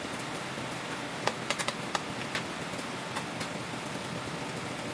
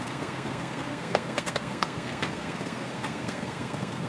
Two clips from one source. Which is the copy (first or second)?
second